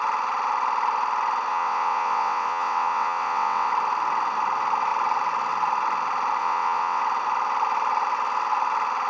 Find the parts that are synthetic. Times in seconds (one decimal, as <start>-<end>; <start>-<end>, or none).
1.5-3.7; 6.4-7.0